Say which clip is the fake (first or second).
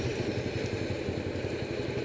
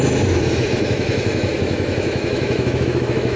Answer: second